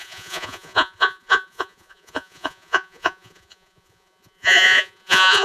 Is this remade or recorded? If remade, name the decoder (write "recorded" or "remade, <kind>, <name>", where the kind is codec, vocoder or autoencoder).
remade, vocoder, Vocos